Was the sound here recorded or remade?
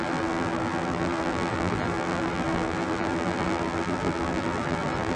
remade